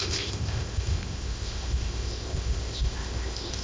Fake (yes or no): yes